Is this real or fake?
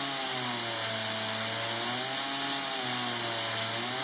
real